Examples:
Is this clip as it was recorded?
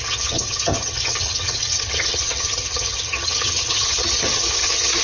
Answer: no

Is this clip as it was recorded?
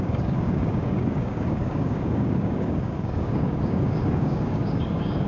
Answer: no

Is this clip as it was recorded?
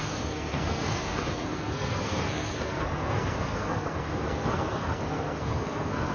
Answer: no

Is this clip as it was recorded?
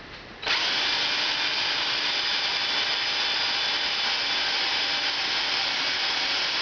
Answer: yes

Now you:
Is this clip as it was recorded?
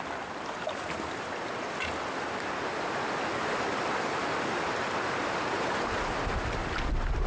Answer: yes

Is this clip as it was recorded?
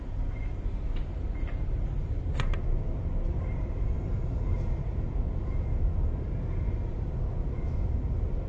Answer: yes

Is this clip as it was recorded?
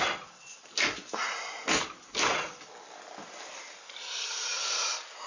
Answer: yes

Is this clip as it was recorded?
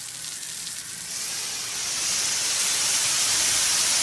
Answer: yes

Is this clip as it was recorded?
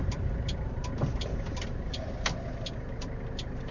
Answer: no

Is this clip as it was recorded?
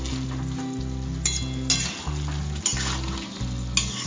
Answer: yes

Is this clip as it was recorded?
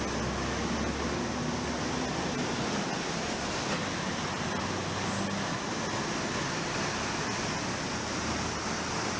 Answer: yes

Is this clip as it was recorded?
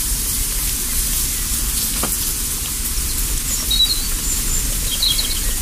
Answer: yes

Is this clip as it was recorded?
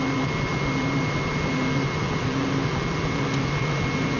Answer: yes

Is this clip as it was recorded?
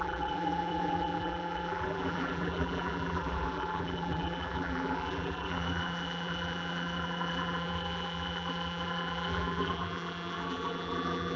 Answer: no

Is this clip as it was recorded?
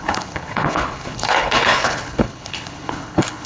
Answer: no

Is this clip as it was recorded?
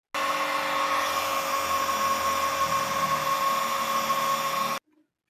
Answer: yes